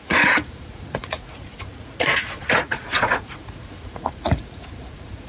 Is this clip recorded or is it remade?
remade